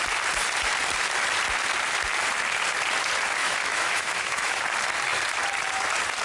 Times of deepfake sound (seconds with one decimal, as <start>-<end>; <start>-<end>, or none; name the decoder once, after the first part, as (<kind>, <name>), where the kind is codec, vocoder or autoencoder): 3.4-4.6 (autoencoder, DAC-VAE)